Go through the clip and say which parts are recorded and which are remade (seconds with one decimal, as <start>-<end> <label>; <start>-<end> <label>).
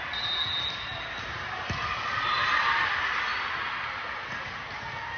0.0-5.2 recorded